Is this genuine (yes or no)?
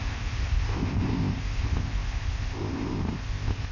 no